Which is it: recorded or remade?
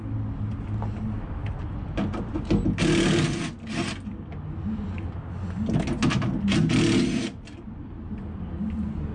recorded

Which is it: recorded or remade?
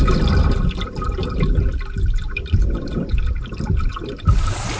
recorded